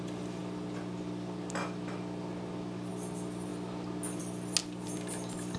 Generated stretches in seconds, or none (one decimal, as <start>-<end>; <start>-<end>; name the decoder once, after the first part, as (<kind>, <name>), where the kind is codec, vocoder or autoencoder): none